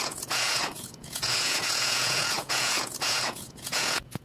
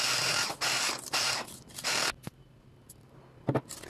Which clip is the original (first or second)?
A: second